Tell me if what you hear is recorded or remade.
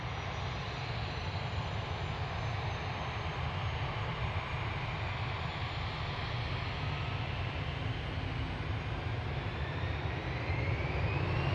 recorded